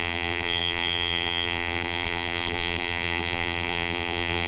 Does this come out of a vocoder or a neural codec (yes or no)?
yes